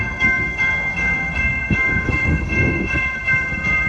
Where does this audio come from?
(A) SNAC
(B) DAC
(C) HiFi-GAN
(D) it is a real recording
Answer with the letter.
A